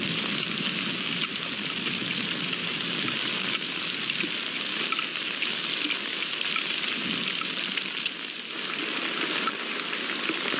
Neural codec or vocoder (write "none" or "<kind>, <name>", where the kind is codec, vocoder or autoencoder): none